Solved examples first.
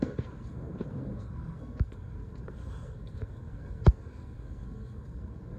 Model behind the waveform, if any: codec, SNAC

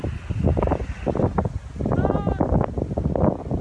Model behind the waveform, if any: none